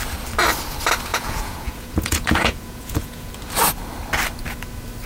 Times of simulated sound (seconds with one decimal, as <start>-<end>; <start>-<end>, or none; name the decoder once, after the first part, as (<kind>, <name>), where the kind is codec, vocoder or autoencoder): 1.1-3.3 (vocoder, Vocos)